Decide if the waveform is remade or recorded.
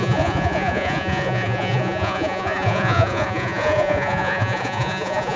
remade